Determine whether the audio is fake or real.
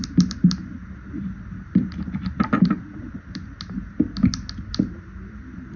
real